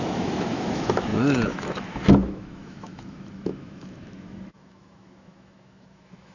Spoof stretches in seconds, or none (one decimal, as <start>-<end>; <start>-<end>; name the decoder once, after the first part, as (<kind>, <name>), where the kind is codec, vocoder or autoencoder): 0.0-6.3 (autoencoder, DAC-VAE)